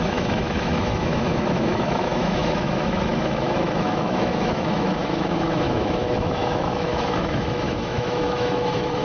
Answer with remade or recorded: remade